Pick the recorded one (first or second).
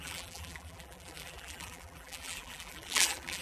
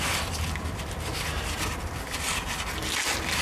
second